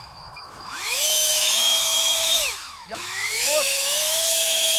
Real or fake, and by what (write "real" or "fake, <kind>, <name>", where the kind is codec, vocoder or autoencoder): fake, autoencoder, DAC-VAE